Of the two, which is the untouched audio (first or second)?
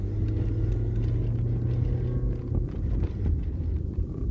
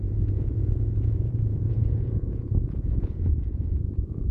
first